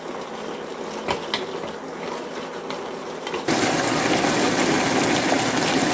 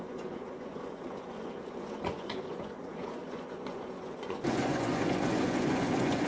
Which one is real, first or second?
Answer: first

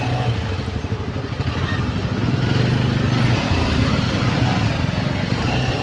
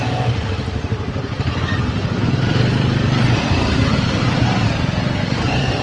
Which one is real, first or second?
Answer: first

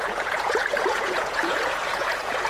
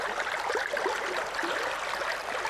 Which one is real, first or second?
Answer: second